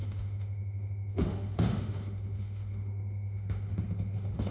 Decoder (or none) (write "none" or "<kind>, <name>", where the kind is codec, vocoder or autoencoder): autoencoder, DAC-VAE